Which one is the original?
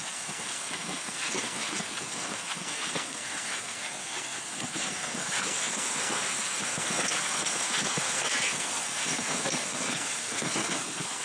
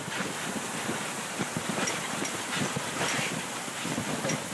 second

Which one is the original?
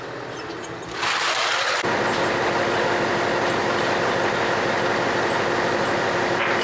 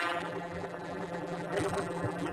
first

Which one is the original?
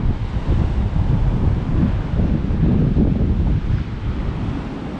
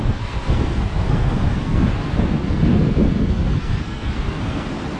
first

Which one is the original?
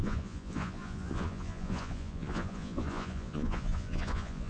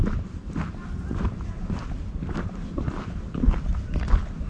second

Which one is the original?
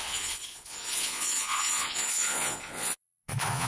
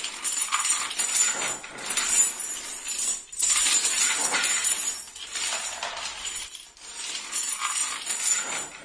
second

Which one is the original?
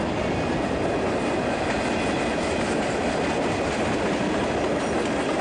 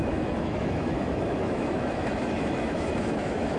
first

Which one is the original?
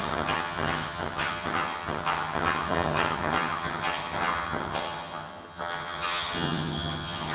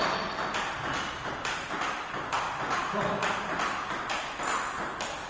second